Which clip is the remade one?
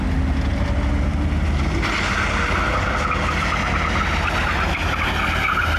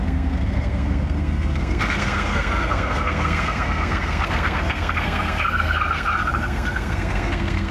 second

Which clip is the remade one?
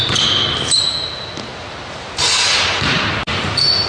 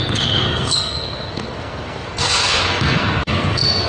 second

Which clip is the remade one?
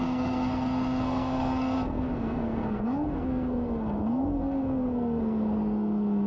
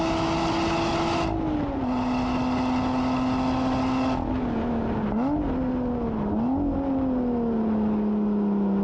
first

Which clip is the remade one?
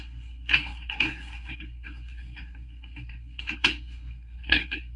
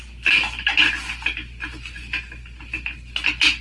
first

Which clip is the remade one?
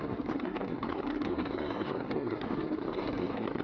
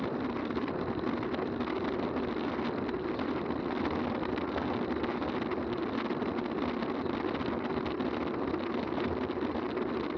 first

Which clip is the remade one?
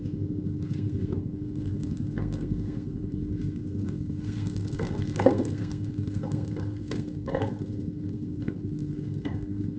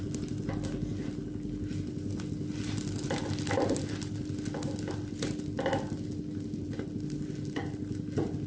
first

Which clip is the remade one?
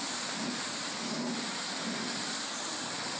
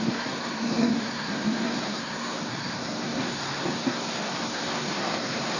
second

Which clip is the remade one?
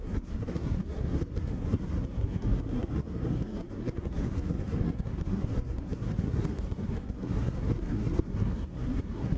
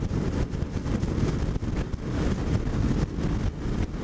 first